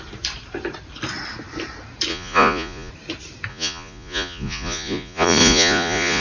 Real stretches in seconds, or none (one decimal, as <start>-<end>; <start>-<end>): 0.0-2.1; 2.9-3.5